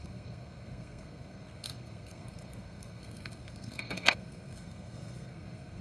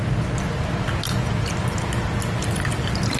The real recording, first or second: second